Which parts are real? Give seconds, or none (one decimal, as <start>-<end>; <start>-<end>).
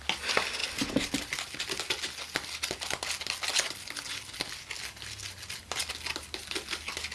0.0-0.6; 1.8-3.5; 4.5-7.1